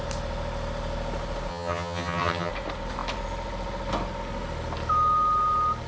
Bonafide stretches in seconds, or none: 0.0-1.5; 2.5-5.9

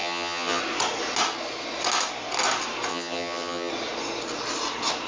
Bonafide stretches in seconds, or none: 0.6-2.9; 3.7-5.1

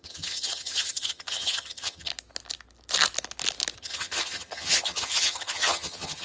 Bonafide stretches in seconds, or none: 2.1-3.8

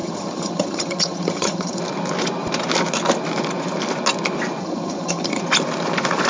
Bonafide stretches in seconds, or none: 1.8-4.6; 5.4-6.3

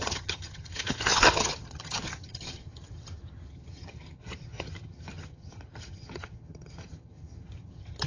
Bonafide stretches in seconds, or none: none

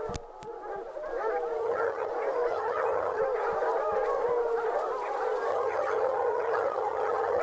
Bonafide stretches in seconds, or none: 0.0-1.6; 2.1-2.5; 3.2-5.5

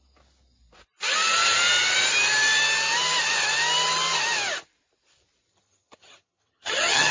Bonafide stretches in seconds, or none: 0.0-5.5